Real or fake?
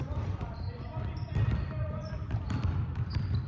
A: fake